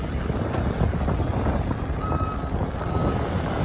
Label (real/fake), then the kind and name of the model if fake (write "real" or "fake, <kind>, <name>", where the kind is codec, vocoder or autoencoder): real